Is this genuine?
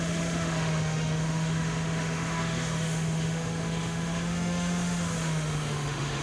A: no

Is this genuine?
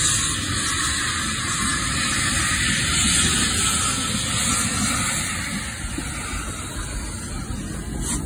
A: yes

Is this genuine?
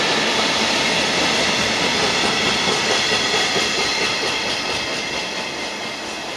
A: yes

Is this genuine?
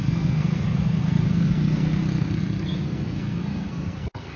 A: no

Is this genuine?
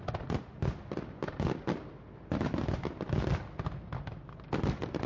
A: yes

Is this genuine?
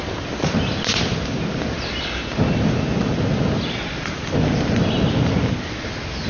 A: yes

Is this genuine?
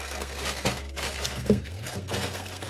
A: no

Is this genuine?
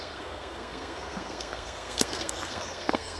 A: no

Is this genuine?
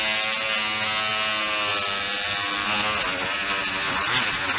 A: yes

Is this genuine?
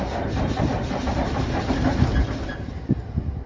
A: yes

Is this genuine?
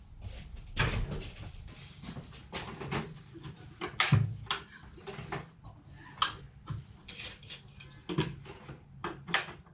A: yes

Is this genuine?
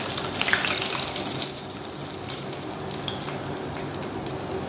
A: yes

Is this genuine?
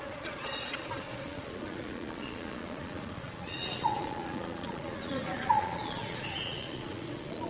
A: no